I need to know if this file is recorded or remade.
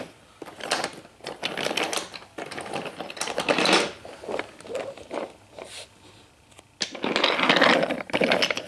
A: recorded